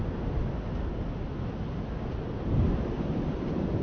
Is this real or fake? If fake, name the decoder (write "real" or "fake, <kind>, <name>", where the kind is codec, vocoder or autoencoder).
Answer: real